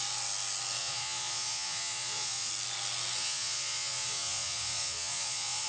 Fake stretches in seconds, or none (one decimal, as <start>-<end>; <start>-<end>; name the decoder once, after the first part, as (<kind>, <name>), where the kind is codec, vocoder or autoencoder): 0.8-2.5 (vocoder, Vocos); 3.2-5.7